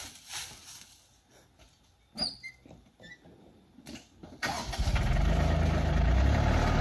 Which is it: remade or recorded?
recorded